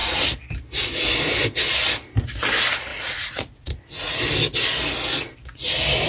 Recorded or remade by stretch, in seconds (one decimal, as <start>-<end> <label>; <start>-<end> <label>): 0.0-2.9 recorded; 2.9-4.2 remade; 4.2-6.1 recorded